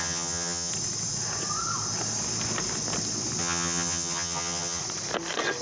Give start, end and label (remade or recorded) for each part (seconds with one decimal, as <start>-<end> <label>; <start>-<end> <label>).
0.0-0.7 remade; 0.7-3.4 recorded; 3.4-4.8 remade; 4.8-5.6 recorded